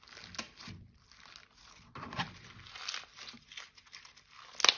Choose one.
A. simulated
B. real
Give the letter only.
B